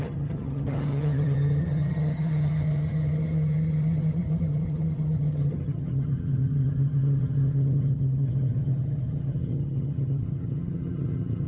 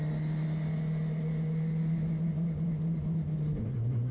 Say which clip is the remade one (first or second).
first